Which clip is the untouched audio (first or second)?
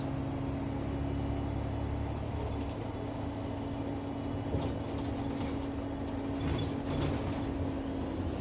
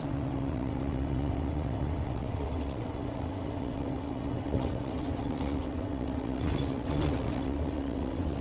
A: first